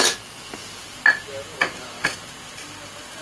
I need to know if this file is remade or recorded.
recorded